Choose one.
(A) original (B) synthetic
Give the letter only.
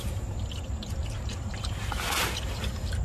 A